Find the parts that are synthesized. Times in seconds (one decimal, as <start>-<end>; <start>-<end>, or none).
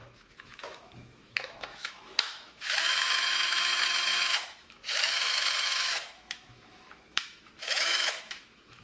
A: 0.0-8.8